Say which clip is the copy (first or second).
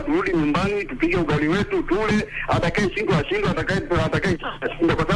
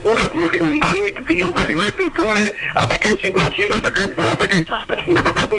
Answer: second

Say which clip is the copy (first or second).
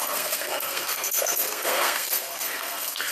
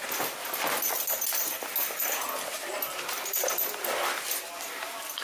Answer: first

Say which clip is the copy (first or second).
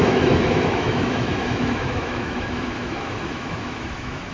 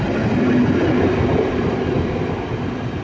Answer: first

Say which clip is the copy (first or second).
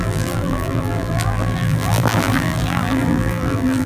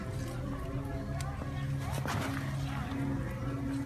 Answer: first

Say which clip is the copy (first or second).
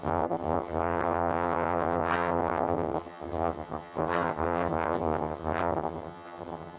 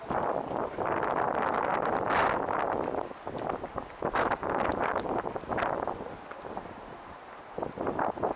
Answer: first